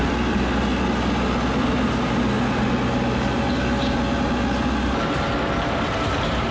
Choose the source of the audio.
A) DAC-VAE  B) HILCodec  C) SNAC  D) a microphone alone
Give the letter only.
D